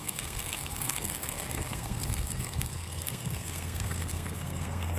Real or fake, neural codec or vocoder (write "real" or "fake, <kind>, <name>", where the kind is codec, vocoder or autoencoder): fake, codec, SNAC